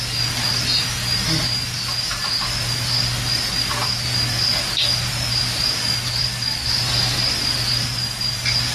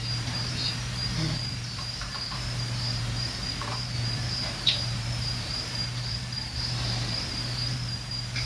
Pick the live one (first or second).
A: first